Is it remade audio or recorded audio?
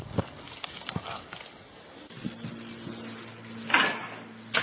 recorded